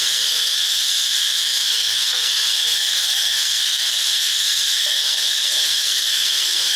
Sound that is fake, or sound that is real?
fake